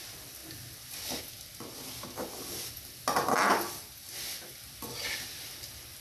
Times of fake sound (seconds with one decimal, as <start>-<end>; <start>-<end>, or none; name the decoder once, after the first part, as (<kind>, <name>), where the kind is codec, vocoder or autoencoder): none